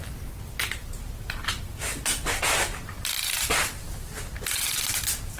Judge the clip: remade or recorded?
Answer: remade